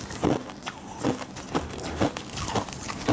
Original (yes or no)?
yes